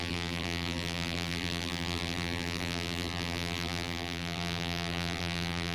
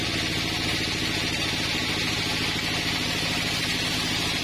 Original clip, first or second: second